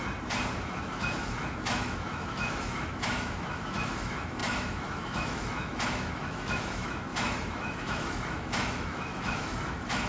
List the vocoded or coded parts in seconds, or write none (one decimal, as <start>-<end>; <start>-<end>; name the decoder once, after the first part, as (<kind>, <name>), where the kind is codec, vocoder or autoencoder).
0.6-10.1 (autoencoder, DAC-VAE)